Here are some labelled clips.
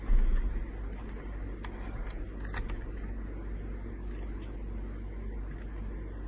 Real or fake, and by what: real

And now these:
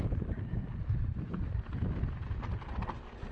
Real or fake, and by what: real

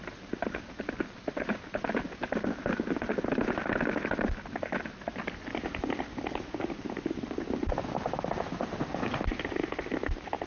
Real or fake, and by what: real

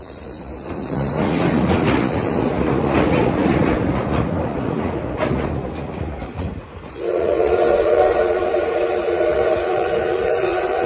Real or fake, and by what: fake, vocoder, Vocos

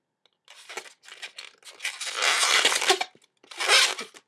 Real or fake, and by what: real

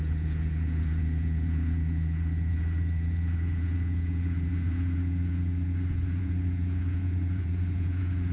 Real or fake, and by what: fake, vocoder, Vocos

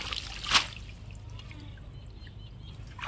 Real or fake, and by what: real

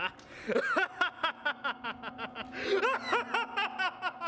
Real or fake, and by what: real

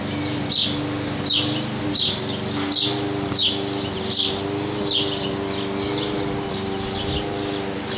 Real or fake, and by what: real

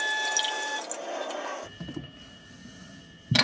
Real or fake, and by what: real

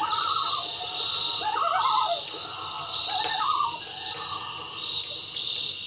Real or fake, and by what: real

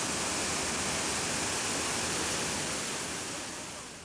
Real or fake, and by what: real